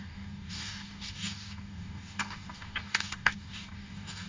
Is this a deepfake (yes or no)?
yes